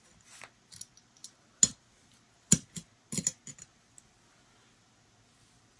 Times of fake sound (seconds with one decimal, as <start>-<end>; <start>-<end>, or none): none